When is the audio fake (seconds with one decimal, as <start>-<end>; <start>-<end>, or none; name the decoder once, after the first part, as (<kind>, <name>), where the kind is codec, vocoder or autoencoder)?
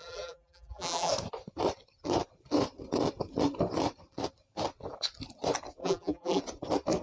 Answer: 0.0-1.1 (vocoder, BigVGAN v2); 5.8-6.4